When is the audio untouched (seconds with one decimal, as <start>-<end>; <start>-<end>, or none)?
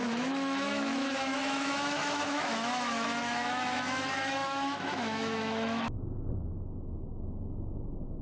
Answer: none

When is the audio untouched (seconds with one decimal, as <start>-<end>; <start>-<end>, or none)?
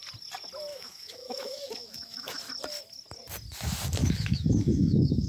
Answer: 0.0-0.7; 2.4-4.0